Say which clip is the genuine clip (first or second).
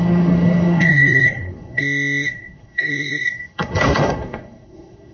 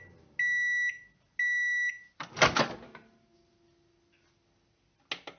second